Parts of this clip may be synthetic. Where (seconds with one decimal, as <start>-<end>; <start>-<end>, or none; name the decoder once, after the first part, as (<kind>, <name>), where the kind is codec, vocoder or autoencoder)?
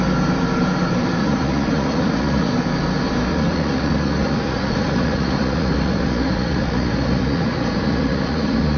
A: 1.2-2.5 (vocoder, Vocos); 3.3-8.8